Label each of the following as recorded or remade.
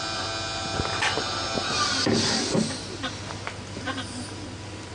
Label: recorded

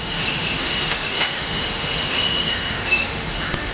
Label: remade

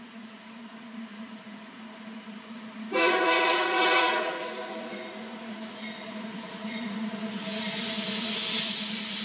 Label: remade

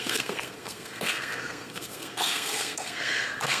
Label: remade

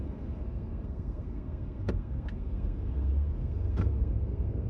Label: remade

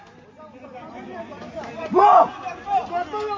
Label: recorded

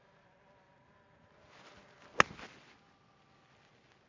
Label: recorded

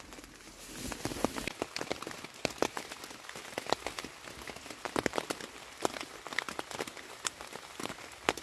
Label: recorded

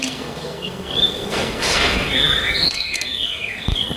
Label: remade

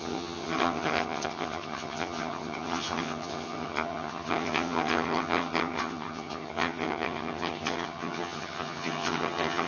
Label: remade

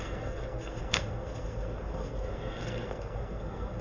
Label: remade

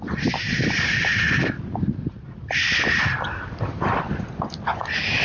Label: recorded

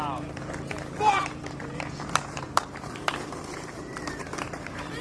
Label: remade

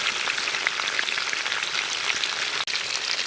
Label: recorded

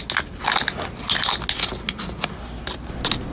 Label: recorded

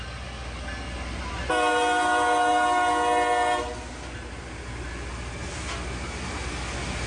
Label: recorded